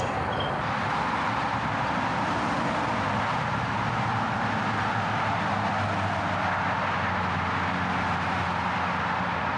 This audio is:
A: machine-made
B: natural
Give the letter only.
B